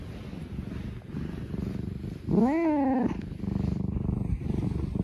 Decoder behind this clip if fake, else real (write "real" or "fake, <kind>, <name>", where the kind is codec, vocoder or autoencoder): real